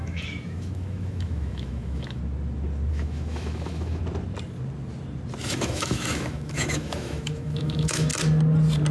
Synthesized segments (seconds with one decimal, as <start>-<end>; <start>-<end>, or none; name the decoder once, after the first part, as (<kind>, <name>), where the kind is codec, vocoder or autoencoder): 0.0-2.2 (autoencoder, DAC-VAE); 2.9-4.0; 5.4-8.1